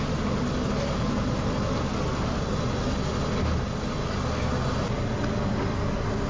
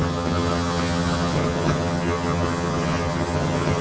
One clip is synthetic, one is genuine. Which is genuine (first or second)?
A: first